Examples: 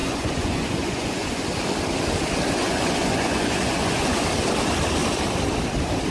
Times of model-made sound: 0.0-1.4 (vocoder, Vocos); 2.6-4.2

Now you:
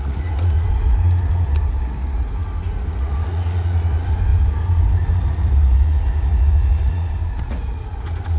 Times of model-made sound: 0.0-8.4 (vocoder, Vocos)

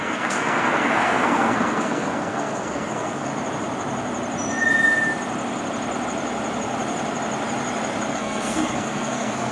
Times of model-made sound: 0.0-3.3 (codec, SNAC); 8.1-9.5

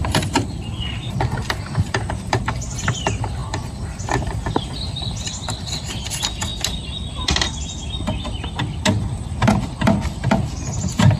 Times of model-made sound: 0.0-6.5 (vocoder, BigVGAN v2); 10.4-11.2

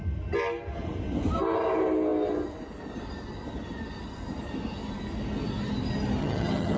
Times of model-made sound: 6.2-6.8 (vocoder, HiFi-GAN)

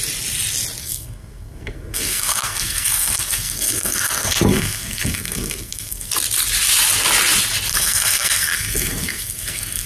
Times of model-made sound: 0.8-6.1 (codec, SNAC); 7.7-9.9

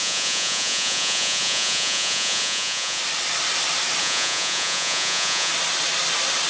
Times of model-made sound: 0.0-3.0 (vocoder, Vocos); 4.0-5.5

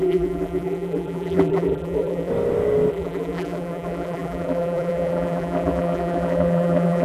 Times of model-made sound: 0.0-2.3 (vocoder, BigVGAN v2); 2.9-7.0